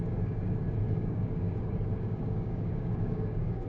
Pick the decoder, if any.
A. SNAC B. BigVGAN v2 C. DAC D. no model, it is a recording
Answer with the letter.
C